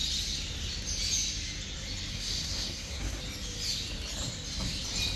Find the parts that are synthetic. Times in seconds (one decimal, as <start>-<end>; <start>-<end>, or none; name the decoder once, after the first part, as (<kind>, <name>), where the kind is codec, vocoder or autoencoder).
2.1-3.2 (codec, SNAC)